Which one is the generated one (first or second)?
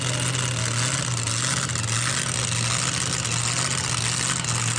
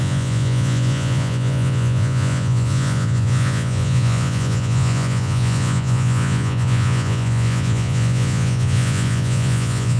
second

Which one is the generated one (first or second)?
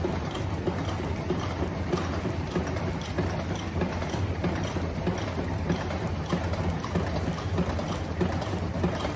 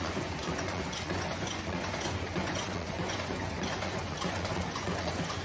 second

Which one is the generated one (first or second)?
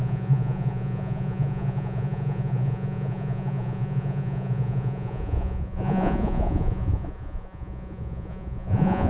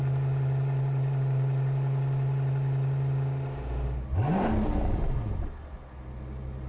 first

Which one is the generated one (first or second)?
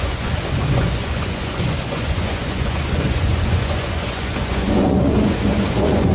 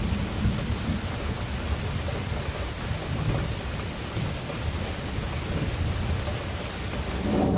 first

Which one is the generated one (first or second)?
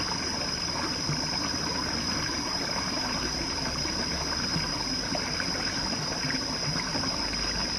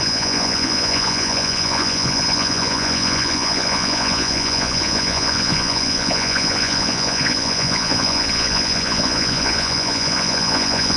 second